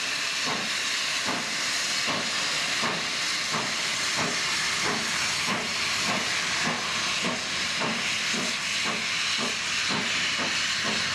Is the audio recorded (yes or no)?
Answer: yes